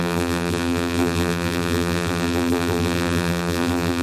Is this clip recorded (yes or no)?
no